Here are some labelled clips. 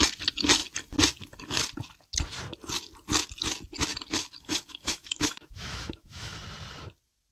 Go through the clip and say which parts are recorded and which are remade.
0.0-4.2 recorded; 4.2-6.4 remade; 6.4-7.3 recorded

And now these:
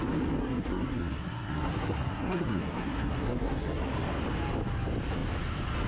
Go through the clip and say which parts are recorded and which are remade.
0.0-0.4 recorded; 0.4-3.9 remade; 3.9-5.9 recorded